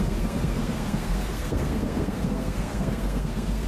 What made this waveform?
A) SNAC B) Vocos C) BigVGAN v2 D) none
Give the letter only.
A